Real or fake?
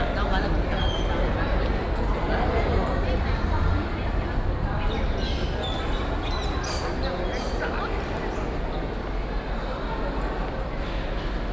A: real